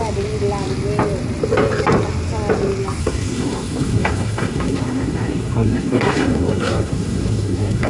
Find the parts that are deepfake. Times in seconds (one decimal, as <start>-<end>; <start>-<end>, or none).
3.0-7.9